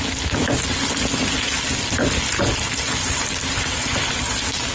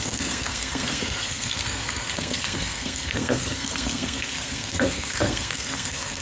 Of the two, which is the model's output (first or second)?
second